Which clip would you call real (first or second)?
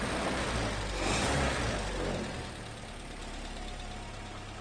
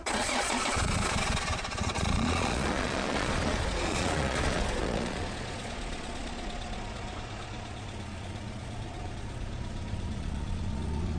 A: first